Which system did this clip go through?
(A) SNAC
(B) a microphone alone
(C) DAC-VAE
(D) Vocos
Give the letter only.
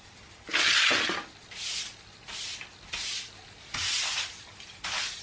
B